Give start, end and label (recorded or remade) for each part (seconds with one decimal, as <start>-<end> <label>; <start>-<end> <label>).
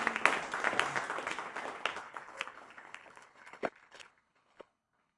0.0-2.0 recorded; 2.0-5.2 remade